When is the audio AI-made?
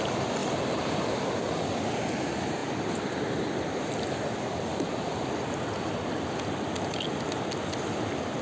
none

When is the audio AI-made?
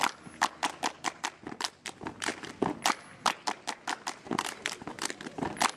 none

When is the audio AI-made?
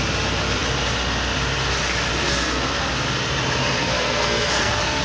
2.2-2.8 (codec, SNAC); 3.8-5.0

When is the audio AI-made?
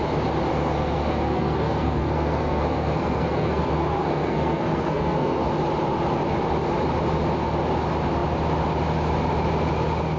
0.5-5.5 (codec, SNAC)